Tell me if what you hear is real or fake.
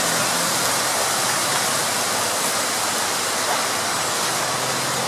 real